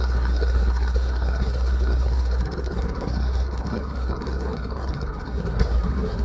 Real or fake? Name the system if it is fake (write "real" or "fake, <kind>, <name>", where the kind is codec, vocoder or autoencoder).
fake, codec, SNAC